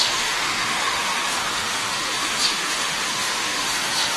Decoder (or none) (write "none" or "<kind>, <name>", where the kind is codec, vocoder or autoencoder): autoencoder, DAC-VAE